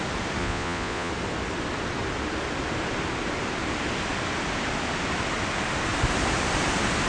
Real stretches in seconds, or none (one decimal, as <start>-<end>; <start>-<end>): 0.0-0.4; 1.1-7.1